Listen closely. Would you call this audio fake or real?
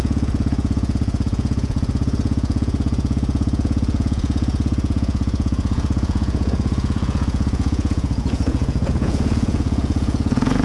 fake